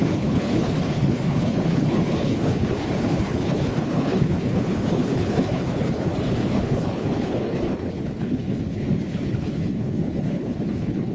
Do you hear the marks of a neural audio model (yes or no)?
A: yes